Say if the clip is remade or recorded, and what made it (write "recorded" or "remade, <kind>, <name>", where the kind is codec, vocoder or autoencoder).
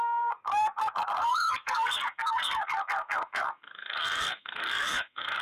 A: remade, codec, SNAC